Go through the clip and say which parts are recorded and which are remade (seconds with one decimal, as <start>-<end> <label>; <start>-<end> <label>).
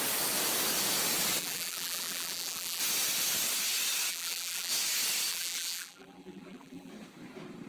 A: 0.0-1.4 recorded; 1.4-2.8 remade; 2.8-4.1 recorded; 4.1-4.7 remade; 4.7-5.3 recorded; 5.3-6.9 remade; 6.9-7.7 recorded